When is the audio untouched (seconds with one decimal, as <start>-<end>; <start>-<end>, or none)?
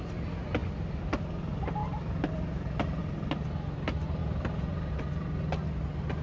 0.0-0.6; 1.2-4.2; 4.9-6.2